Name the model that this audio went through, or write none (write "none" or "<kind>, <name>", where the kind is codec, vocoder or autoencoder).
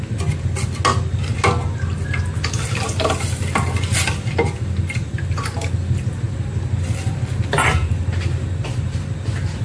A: none